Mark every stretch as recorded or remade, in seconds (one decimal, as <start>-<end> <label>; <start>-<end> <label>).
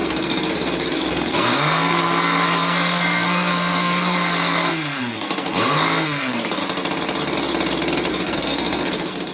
0.0-6.6 remade; 6.6-8.1 recorded; 8.1-9.3 remade